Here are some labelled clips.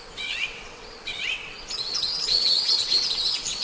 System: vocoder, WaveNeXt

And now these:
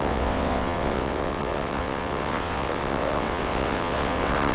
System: vocoder, WaveNeXt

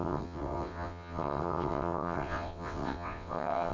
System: vocoder, WaveNeXt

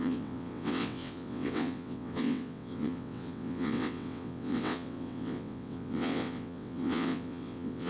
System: vocoder, WaveNeXt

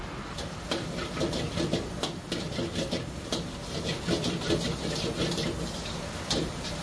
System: none